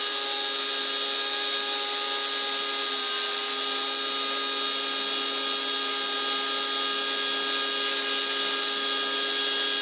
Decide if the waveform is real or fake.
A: real